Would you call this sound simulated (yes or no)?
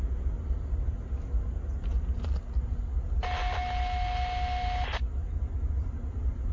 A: no